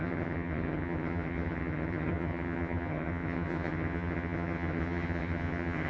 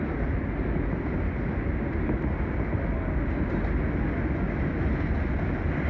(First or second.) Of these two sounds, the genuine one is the second